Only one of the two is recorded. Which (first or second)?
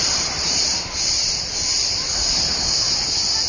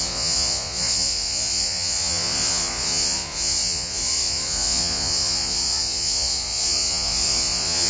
first